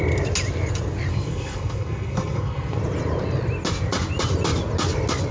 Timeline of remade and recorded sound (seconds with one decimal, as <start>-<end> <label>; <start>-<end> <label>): 0.0-1.1 recorded; 1.1-2.8 remade; 2.8-5.3 recorded